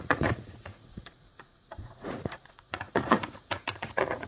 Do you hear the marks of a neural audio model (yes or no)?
yes